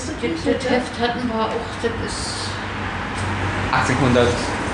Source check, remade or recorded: recorded